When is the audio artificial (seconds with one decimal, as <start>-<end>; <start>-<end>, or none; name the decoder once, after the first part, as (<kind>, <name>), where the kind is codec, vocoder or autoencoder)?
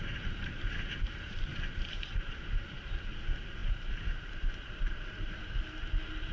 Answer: 0.0-3.1 (vocoder, BigVGAN v2); 3.6-5.4